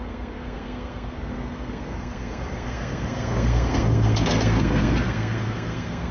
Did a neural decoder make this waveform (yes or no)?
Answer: yes